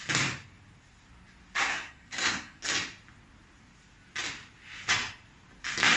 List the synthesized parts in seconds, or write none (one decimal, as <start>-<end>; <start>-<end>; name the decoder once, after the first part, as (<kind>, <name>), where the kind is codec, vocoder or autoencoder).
1.7-2.6 (codec, SNAC)